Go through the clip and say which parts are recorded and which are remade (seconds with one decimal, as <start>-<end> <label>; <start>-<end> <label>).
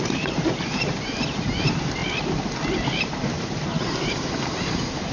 0.0-2.0 remade; 2.0-3.0 recorded; 3.0-5.1 remade